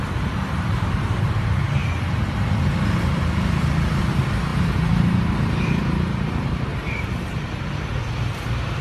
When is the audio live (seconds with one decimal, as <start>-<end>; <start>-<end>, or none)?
1.8-4.0